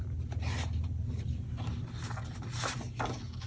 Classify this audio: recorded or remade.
recorded